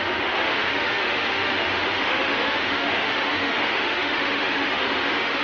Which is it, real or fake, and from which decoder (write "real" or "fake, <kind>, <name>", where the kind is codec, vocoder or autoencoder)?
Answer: fake, autoencoder, DAC-VAE